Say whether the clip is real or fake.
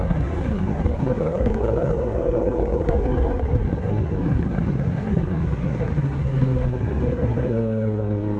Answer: fake